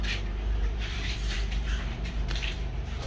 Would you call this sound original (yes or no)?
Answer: no